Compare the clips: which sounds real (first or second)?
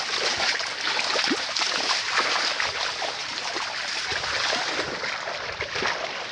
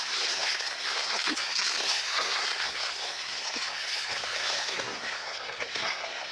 first